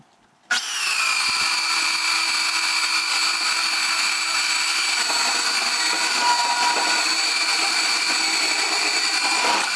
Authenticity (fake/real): real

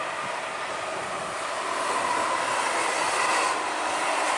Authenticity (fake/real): real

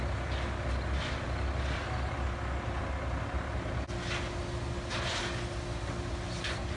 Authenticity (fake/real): real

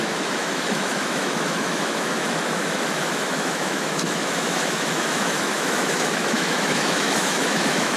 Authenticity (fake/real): fake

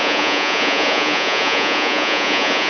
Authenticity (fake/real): fake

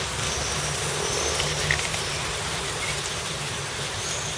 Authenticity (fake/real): real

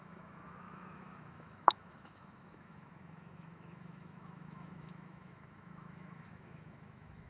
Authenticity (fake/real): fake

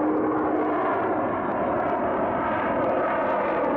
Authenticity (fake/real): real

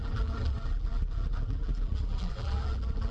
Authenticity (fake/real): fake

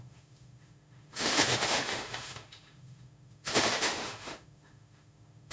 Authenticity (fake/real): fake